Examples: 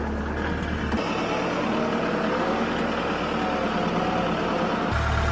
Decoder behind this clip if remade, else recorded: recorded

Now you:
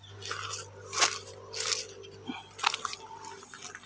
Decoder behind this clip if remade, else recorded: recorded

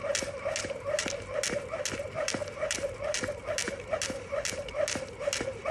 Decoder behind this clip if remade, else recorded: recorded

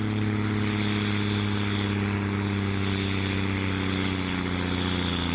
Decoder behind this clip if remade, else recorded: recorded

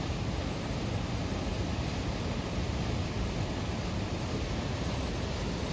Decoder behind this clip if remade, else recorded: recorded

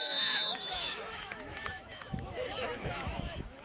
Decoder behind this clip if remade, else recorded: remade, autoencoder, DAC-VAE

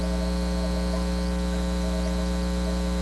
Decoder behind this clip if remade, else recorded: recorded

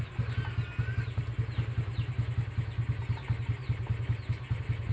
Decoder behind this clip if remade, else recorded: recorded